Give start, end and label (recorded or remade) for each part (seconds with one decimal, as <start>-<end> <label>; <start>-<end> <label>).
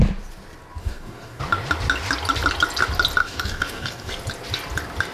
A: 0.0-0.8 recorded; 0.8-1.4 remade; 1.4-3.2 recorded; 3.2-4.1 remade; 4.1-5.1 recorded